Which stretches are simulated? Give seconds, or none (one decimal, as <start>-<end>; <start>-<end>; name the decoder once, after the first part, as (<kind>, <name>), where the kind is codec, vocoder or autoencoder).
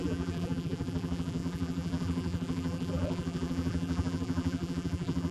0.0-5.3 (vocoder, BigVGAN v2)